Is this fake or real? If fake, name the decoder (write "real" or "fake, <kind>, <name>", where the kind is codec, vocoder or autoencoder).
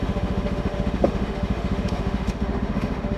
fake, autoencoder, DAC-VAE